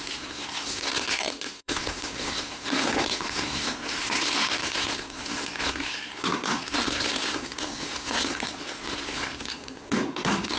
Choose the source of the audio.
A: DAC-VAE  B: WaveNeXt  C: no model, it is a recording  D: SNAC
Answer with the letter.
D